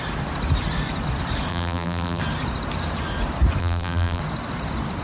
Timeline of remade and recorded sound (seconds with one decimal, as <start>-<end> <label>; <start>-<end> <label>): 0.0-1.5 recorded; 1.5-2.2 remade; 2.2-3.6 recorded; 3.6-4.2 remade; 4.2-5.0 recorded